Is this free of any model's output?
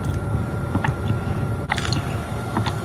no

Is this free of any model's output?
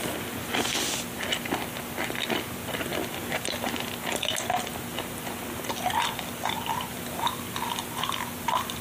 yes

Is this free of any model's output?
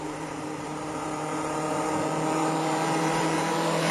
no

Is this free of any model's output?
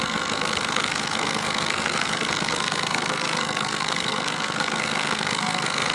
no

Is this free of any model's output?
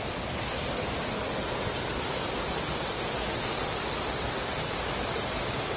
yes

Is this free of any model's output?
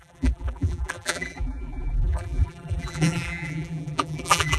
no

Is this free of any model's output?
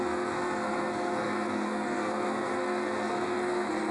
no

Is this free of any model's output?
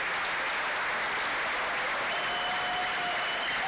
yes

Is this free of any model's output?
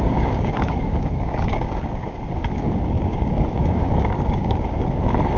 no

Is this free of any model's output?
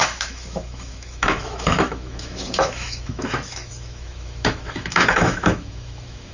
no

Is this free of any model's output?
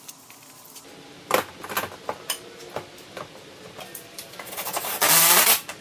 yes